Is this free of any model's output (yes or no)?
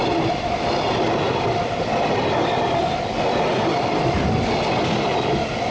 yes